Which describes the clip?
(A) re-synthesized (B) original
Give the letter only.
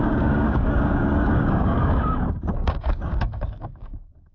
A